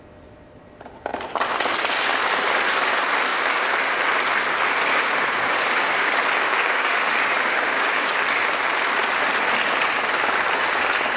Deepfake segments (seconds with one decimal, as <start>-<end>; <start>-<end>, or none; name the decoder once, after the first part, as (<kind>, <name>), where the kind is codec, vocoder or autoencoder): 3.3-3.9 (codec, DAC); 4.8-8.2